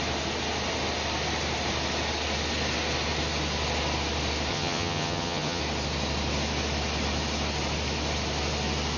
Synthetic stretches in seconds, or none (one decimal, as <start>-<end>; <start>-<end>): 4.5-5.6